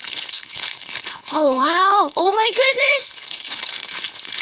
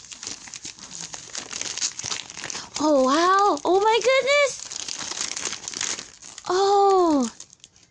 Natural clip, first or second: second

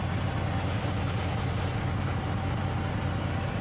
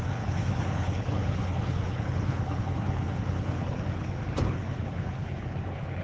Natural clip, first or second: first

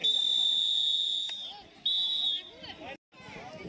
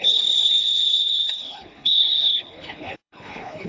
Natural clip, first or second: first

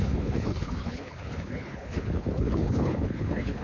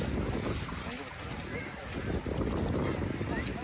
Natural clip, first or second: second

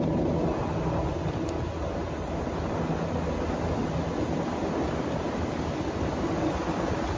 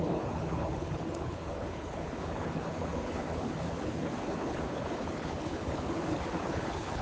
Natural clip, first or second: first